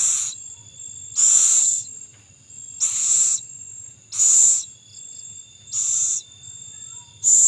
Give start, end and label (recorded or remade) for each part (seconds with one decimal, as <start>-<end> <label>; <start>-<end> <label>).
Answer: 0.0-7.5 recorded